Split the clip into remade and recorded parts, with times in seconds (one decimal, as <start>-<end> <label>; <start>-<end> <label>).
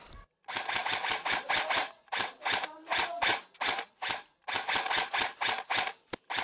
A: 0.0-6.4 recorded